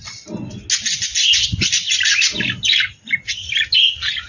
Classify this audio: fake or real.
real